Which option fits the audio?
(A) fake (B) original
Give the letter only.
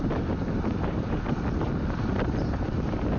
A